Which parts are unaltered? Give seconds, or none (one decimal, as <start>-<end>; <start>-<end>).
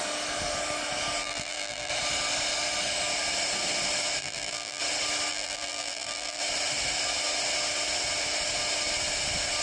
0.0-1.2; 1.9-4.2; 4.8-5.3; 6.4-9.6